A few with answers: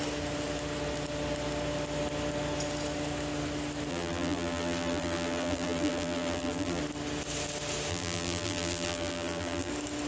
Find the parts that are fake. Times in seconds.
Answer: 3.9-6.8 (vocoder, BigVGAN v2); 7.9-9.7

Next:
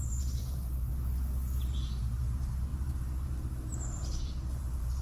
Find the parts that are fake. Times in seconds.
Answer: 0.0-0.9 (vocoder, BigVGAN v2); 1.6-5.0

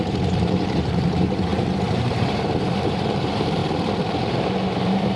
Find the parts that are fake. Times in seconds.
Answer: 0.0-3.6 (vocoder, BigVGAN v2); 4.8-5.2